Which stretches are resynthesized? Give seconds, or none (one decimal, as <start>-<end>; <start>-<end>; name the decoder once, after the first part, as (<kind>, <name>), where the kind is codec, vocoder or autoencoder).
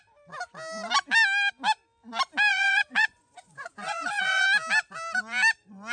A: 2.5-4.4 (vocoder, Vocos)